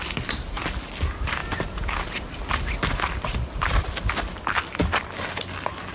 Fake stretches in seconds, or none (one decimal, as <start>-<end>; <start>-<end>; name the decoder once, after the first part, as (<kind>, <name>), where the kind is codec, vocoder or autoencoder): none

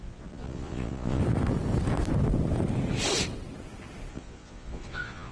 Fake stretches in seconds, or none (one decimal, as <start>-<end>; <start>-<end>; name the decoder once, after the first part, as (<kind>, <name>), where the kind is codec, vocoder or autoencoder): 0.0-1.2 (vocoder, Vocos); 4.1-5.3

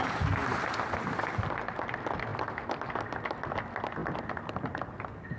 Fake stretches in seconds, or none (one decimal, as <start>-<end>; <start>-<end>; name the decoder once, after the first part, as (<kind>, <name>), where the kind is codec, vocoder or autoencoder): none